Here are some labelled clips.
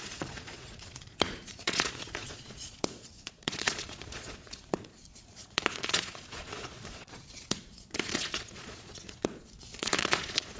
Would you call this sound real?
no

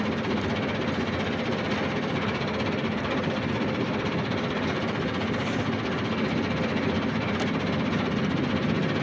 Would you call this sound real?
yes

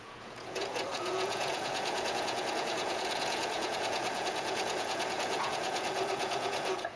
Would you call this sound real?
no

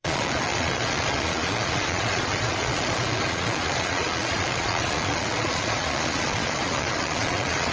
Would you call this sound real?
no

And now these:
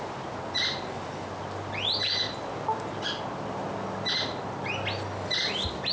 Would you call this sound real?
yes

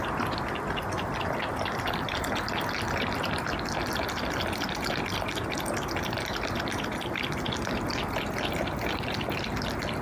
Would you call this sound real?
yes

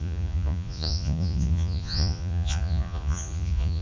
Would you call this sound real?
no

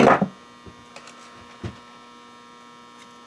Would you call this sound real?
yes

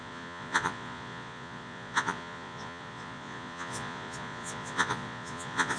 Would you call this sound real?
no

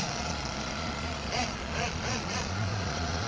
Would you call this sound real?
no